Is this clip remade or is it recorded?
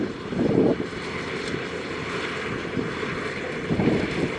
recorded